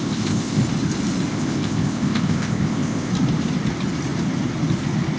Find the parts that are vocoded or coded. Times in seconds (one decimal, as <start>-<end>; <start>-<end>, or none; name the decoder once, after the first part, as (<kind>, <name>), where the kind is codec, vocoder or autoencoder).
0.0-0.6 (codec, ZipCodec); 1.3-3.1